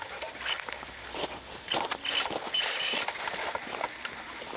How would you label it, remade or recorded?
recorded